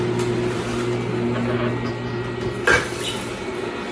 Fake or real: real